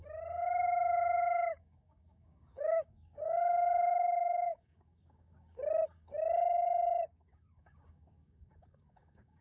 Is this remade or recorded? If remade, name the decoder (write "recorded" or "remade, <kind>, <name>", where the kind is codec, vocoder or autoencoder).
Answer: remade, codec, DAC